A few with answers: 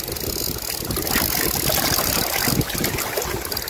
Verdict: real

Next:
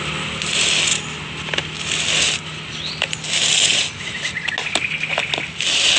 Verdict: real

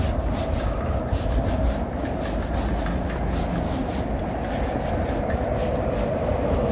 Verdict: real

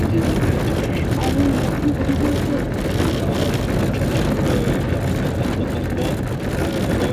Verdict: real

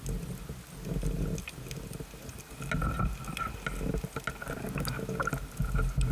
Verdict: real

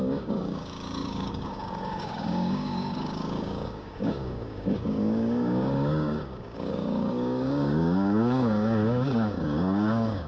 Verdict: fake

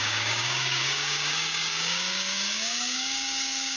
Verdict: fake